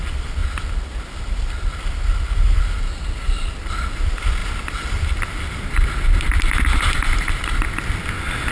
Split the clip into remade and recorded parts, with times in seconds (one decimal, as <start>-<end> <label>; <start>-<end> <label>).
0.0-8.5 recorded